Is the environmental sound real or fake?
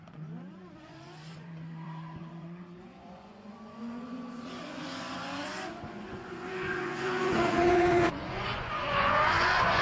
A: fake